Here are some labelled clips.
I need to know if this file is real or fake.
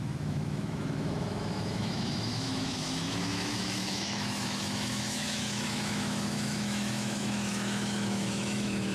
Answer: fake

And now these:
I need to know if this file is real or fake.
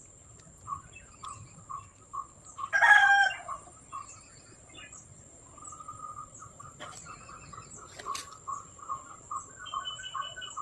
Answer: real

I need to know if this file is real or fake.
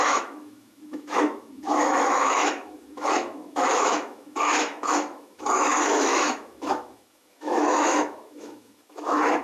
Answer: fake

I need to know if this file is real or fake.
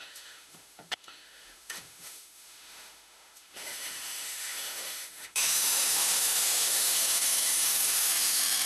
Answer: fake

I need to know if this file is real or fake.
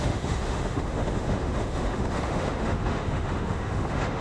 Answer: fake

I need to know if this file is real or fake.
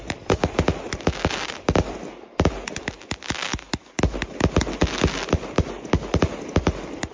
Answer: real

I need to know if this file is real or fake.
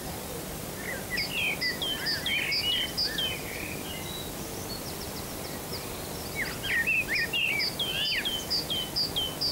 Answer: real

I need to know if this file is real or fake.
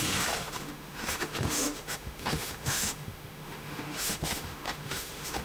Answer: fake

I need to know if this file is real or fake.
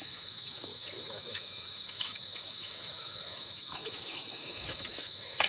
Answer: fake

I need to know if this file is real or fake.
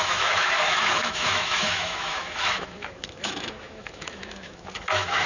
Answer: fake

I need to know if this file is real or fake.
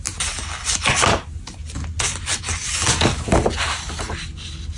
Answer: real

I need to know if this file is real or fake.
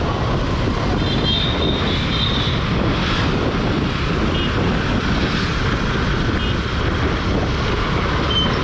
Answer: real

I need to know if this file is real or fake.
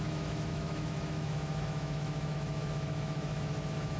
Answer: fake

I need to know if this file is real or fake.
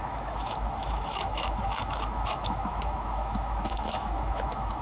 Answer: fake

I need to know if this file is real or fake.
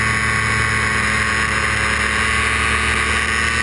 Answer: real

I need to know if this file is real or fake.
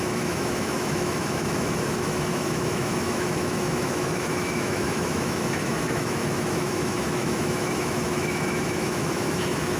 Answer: fake